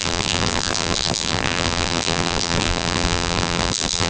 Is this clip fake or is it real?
fake